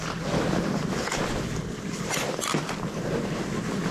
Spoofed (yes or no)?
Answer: no